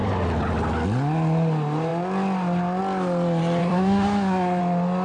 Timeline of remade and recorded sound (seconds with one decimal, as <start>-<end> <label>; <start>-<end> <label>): 0.0-3.6 recorded; 3.6-4.6 remade; 4.6-5.0 recorded